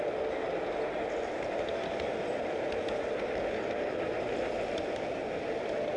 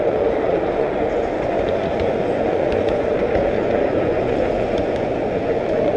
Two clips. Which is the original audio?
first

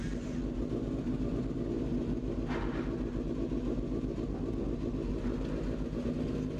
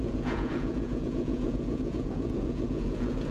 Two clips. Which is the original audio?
first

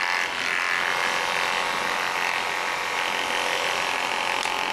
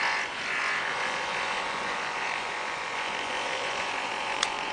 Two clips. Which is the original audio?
first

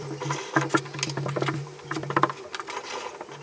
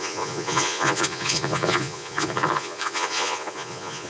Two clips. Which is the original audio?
first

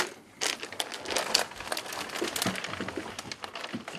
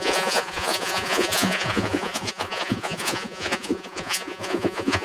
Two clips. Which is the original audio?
first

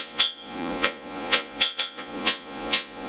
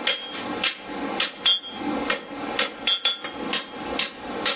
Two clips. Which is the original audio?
second